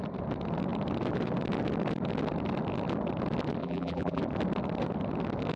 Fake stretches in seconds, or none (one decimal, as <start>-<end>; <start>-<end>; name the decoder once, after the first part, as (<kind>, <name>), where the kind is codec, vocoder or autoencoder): 3.6-4.2 (vocoder, BigVGAN v2)